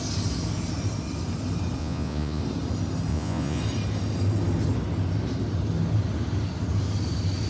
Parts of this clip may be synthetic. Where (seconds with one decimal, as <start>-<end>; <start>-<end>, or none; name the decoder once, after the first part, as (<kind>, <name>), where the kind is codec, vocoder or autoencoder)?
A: 1.8-2.4 (vocoder, Vocos); 3.1-3.6